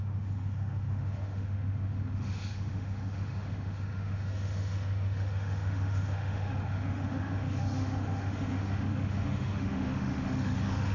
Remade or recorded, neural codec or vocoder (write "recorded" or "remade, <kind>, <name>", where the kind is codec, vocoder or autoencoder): remade, autoencoder, DAC-VAE